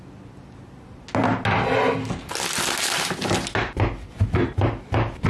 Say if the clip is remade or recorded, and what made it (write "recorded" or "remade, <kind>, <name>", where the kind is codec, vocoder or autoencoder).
recorded